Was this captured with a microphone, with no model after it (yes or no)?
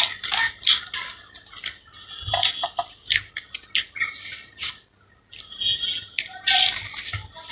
yes